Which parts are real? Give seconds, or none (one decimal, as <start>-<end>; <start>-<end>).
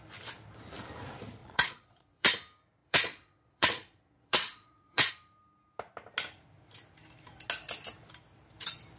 0.0-1.4; 2.3-2.8; 5.1-9.0